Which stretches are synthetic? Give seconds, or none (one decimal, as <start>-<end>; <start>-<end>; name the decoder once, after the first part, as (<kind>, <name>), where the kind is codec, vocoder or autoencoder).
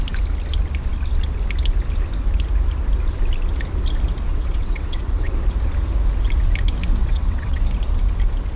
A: 4.3-5.3 (vocoder, WaveNeXt); 7.0-7.7